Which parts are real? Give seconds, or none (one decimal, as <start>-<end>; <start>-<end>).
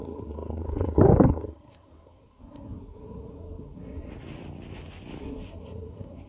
4.1-5.2